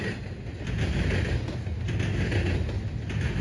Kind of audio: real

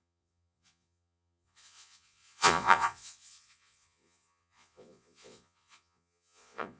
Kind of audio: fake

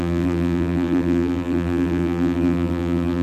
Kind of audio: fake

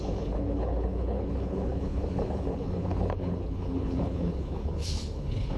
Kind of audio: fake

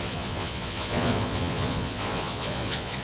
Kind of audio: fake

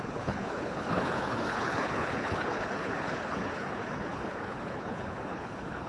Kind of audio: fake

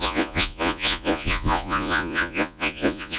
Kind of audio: fake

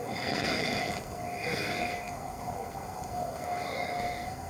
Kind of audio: fake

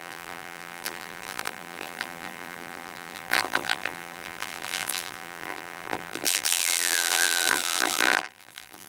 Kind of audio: fake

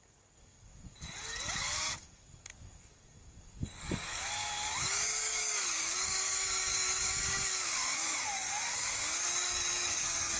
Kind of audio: fake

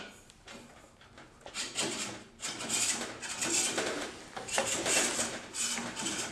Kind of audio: fake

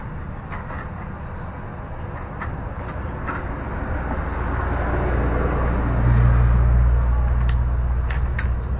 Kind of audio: real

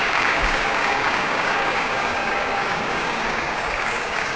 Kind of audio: fake